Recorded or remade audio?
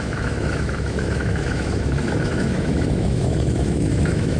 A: remade